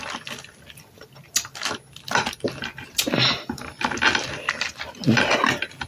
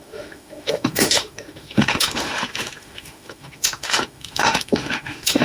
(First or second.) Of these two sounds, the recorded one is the first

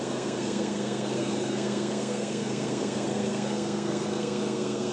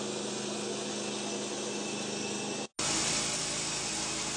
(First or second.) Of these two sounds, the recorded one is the second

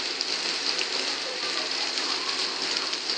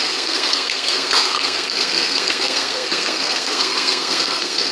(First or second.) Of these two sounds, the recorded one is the first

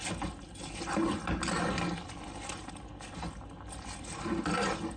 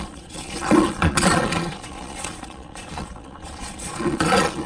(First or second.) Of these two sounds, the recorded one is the first